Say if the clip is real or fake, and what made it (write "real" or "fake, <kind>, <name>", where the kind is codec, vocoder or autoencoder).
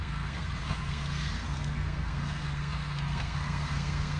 fake, codec, SNAC